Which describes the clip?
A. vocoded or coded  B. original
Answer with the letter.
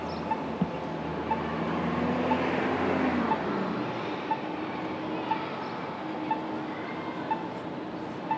B